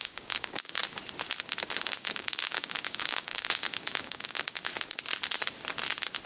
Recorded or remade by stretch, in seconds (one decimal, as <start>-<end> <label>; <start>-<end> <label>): 0.0-0.8 remade; 0.8-1.8 recorded; 1.8-4.7 remade; 4.7-6.3 recorded